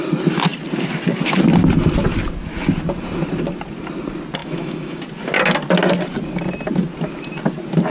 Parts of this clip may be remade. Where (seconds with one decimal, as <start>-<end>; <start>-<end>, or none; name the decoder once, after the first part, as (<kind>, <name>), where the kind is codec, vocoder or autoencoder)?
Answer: 4.4-5.0 (autoencoder, DAC-VAE)

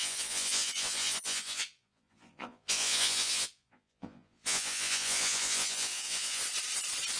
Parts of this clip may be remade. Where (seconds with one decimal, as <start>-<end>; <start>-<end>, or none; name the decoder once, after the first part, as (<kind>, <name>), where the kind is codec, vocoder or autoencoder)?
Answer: 0.0-6.4 (vocoder, Vocos)